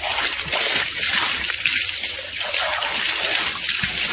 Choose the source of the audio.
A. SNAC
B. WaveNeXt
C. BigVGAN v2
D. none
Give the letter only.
D